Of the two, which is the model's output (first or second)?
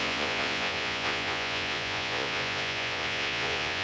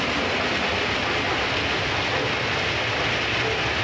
first